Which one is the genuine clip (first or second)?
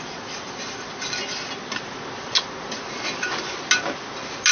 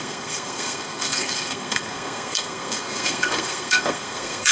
first